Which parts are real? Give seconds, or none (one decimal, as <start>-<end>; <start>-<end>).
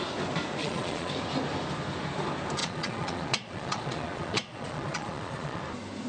0.0-0.6; 1.1-2.6; 5.6-6.1